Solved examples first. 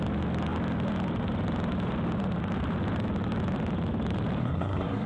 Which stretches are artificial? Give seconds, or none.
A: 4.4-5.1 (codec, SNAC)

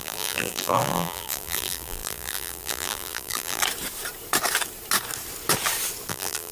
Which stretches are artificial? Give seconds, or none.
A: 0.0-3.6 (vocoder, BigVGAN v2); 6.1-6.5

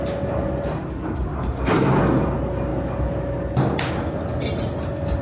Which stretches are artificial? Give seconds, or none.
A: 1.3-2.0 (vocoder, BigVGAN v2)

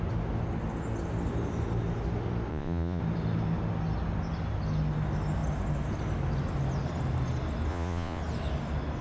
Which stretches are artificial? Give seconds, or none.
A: 2.5-3.0 (vocoder, Vocos); 7.7-8.2

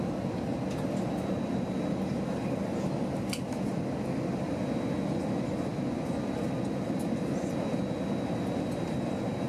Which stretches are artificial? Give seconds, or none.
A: none

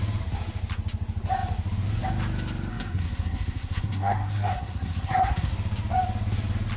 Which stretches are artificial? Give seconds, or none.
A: 2.7-5.5 (codec, SNAC)

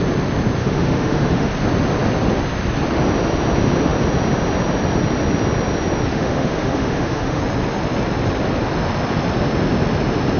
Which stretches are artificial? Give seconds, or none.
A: 0.6-1.5 (autoencoder, DAC-VAE); 6.1-7.4